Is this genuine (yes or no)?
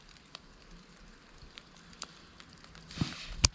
yes